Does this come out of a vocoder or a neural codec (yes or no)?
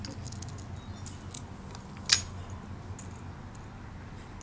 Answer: no